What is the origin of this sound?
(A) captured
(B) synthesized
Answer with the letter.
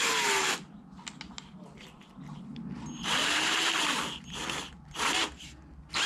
A